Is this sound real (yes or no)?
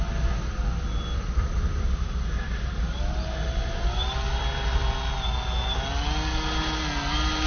yes